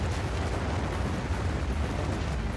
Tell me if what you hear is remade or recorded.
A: recorded